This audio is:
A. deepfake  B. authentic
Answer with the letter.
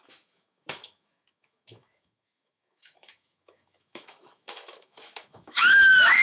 A